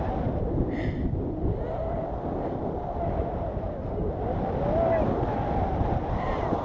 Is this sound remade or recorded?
recorded